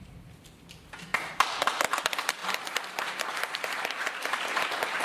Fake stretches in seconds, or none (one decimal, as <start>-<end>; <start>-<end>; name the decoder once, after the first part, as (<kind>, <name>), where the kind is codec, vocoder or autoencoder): none